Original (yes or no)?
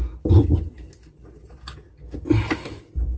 yes